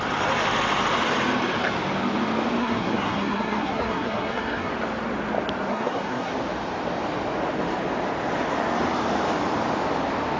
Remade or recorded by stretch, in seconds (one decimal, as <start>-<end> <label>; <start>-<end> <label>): 0.0-2.6 recorded; 2.6-4.7 remade; 4.7-5.7 recorded; 5.7-6.3 remade; 6.3-10.4 recorded